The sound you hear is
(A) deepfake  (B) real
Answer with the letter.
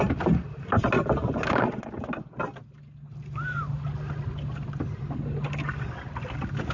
B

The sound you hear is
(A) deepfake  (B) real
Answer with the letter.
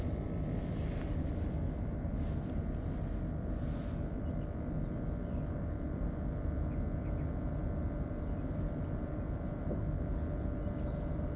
B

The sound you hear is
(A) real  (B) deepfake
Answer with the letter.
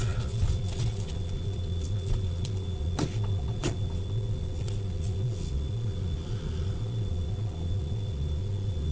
B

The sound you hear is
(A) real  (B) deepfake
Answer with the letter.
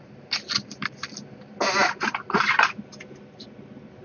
A